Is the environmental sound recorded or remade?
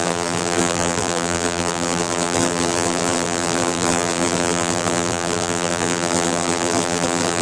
remade